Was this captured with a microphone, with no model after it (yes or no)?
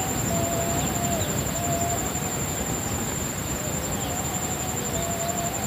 yes